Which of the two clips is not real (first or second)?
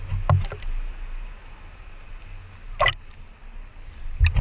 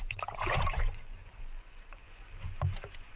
second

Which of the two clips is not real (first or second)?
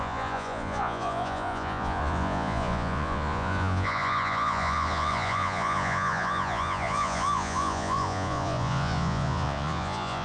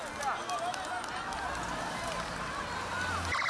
first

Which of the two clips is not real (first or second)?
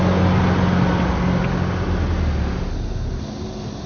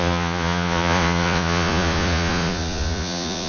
second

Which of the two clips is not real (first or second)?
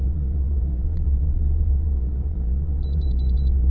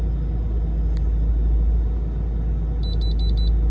first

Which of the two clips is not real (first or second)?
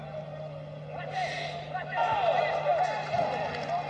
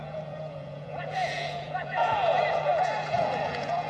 second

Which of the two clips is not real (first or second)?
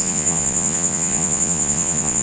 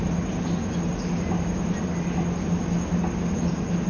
first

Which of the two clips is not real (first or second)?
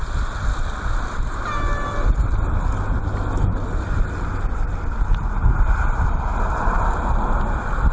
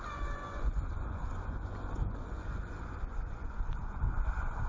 second